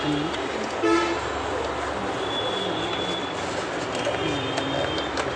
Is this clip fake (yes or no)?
no